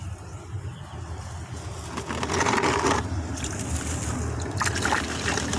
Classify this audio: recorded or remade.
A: recorded